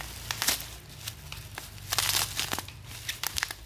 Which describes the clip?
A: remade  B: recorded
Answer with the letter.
B